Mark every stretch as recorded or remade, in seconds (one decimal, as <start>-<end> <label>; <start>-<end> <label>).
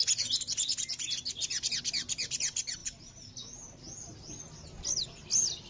0.0-5.7 recorded